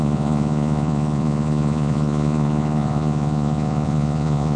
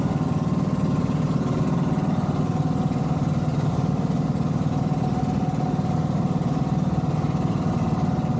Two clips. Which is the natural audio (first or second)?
second